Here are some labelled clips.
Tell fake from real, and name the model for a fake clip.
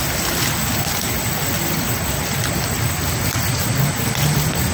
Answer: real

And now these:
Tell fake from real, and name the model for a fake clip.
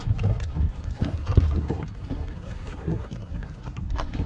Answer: fake, codec, SNAC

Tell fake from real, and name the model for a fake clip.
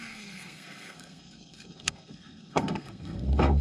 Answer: fake, codec, SNAC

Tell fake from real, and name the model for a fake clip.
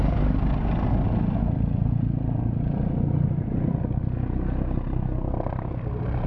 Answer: real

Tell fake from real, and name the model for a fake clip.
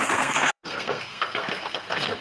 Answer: fake, codec, SNAC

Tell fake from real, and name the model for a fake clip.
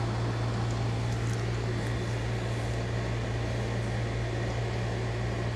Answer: real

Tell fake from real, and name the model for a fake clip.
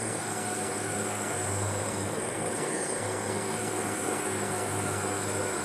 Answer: fake, codec, SNAC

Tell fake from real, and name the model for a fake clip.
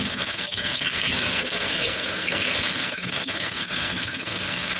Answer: fake, codec, SNAC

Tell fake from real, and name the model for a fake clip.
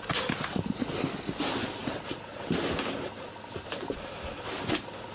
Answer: real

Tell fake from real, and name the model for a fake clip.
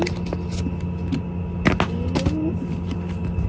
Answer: real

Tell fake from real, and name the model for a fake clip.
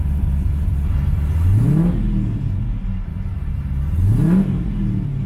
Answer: real